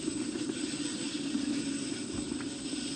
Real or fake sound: real